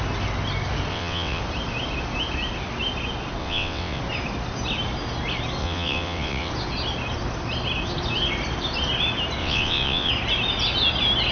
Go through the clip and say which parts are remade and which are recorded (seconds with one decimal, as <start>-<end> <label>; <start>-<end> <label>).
0.0-0.9 recorded; 0.9-1.4 remade; 1.4-3.4 recorded; 3.4-4.0 remade; 4.0-5.6 recorded; 5.6-6.5 remade; 6.5-9.4 recorded; 9.4-10.1 remade; 10.1-11.3 recorded